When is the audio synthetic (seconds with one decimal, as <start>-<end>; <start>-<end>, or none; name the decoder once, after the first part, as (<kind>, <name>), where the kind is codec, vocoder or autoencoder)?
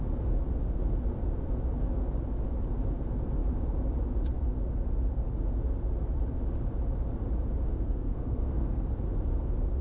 7.7-9.0 (codec, SNAC)